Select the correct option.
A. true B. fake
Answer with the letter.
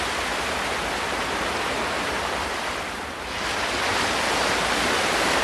A